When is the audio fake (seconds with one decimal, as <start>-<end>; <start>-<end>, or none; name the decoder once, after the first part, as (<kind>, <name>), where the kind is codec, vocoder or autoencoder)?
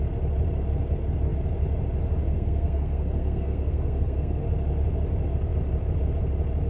2.2-4.4 (codec, SNAC)